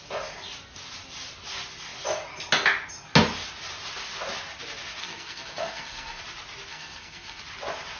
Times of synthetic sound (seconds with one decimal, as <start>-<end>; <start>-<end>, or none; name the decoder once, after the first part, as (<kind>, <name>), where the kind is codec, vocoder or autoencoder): 5.0-6.2 (codec, SNAC); 6.7-7.4